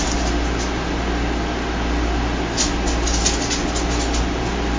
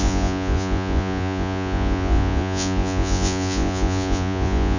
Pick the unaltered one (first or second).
first